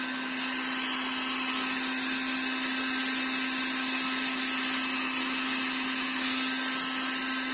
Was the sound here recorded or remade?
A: recorded